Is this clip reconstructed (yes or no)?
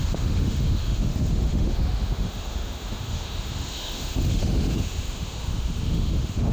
yes